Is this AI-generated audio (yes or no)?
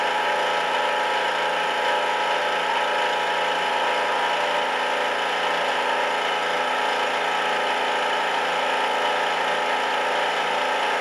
no